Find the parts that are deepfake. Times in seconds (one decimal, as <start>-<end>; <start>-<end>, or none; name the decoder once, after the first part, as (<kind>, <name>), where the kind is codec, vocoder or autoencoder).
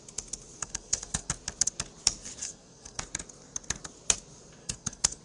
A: 0.6-1.3 (codec, SNAC); 2.4-3.0; 4.6-5.2